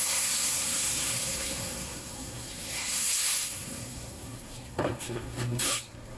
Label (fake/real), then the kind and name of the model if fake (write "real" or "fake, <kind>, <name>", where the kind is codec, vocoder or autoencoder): fake, codec, SNAC